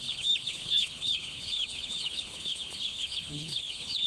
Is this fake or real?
fake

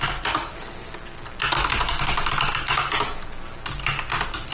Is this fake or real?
real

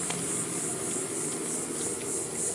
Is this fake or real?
real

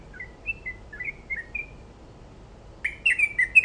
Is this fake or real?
real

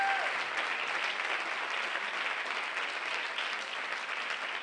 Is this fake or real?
real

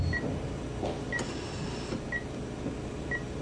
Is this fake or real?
real